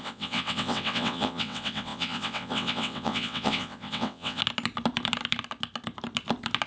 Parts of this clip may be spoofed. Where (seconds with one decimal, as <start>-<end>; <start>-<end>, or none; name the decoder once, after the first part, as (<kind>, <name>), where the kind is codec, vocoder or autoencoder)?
0.0-4.4 (vocoder, WaveNeXt)